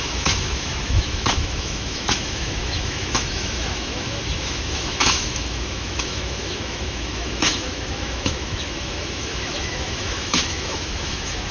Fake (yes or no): yes